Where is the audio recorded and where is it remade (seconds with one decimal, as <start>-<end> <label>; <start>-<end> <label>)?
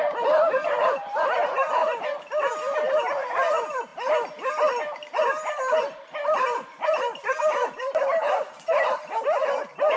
0.0-1.8 remade; 1.8-2.5 recorded; 2.5-3.9 remade; 3.9-5.2 recorded; 5.2-10.0 remade